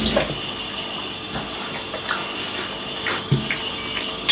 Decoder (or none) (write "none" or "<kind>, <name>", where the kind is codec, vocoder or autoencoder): none